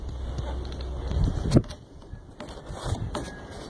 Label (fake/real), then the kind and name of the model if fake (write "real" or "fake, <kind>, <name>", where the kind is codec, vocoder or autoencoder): real